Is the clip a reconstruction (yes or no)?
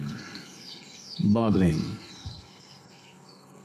yes